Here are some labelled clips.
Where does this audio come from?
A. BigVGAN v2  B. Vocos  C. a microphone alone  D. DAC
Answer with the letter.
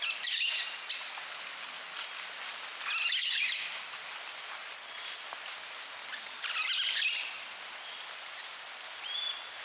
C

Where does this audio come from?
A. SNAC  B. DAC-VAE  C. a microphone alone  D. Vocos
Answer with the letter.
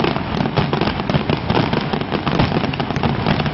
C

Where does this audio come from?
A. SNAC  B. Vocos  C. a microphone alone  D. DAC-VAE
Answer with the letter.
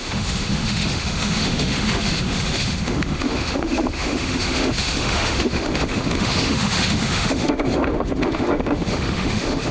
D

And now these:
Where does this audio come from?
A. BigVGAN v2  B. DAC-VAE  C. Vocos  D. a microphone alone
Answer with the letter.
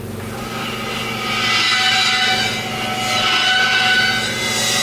D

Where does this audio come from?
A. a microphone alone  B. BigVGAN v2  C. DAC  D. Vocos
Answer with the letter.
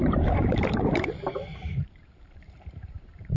B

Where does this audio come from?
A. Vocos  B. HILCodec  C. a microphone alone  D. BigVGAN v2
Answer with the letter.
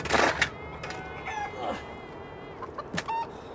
C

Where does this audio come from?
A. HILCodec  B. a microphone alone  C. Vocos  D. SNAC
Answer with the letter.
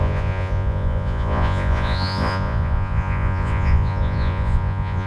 C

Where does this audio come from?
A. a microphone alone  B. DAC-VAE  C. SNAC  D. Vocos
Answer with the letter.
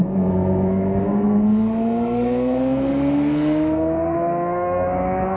C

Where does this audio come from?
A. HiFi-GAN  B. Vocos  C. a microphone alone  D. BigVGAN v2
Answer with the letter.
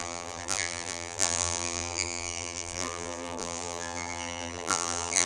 D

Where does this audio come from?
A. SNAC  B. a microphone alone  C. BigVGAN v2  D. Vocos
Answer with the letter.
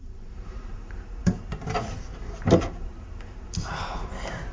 C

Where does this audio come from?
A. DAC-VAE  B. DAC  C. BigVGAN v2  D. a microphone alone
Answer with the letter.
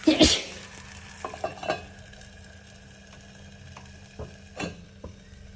D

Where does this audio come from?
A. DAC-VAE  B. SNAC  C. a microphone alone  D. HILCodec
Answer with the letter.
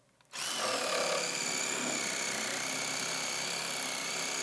C